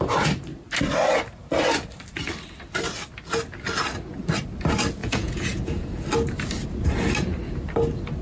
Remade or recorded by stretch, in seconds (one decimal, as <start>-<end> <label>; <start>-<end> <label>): 0.0-5.0 recorded; 5.0-6.0 remade; 6.0-8.2 recorded